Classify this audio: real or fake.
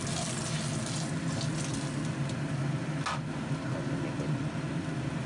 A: real